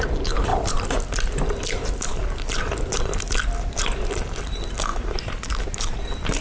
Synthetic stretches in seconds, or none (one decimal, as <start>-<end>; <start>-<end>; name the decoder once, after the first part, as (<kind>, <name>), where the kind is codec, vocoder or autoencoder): none